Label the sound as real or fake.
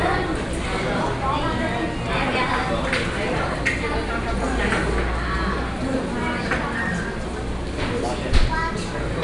real